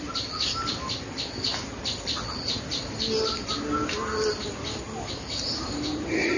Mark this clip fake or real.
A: real